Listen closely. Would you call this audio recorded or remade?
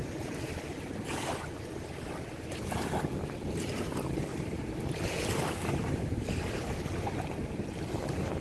recorded